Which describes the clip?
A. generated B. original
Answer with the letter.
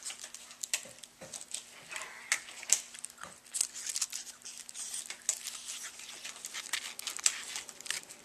B